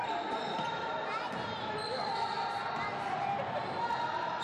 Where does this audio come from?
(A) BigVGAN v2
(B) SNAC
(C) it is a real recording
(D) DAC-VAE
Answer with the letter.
C